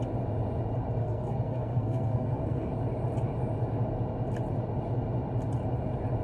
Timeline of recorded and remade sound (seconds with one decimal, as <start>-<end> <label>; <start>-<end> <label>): 0.0-1.0 recorded; 1.0-2.7 remade; 2.7-6.2 recorded